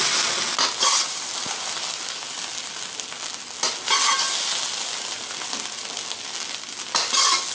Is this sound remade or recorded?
recorded